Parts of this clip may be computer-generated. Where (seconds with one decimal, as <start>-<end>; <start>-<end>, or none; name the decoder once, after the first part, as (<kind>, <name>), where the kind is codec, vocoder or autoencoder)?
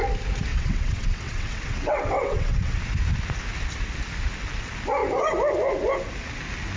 0.5-2.8 (vocoder, WaveNeXt)